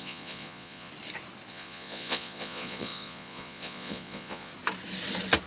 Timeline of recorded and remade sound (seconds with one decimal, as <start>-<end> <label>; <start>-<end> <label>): 0.0-0.9 remade; 0.9-1.5 recorded; 1.5-4.5 remade; 4.5-5.5 recorded